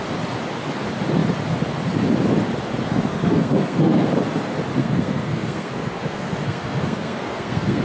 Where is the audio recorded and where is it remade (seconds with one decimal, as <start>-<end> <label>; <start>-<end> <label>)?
0.0-3.1 recorded; 3.1-4.1 remade; 4.1-4.8 recorded; 4.8-7.8 remade